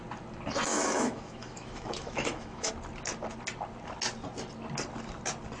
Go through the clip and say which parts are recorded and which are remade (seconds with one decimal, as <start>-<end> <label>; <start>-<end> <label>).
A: 0.0-0.7 recorded; 0.7-2.7 remade; 2.7-5.6 recorded